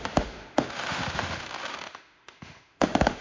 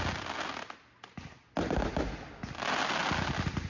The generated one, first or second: first